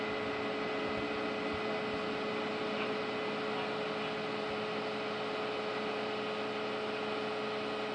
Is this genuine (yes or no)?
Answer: yes